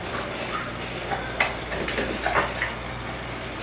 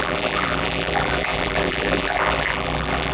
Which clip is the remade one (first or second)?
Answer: second